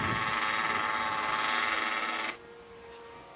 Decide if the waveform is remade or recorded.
recorded